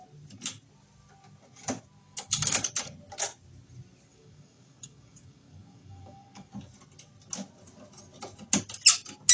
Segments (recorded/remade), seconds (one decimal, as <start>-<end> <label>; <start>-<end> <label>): 0.0-2.0 recorded; 2.0-2.7 remade; 2.7-4.1 recorded; 4.1-6.5 remade; 6.5-9.3 recorded